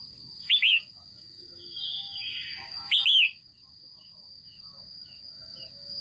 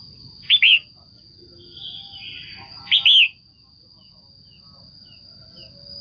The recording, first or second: second